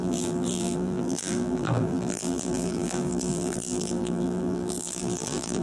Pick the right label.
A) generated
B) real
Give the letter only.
A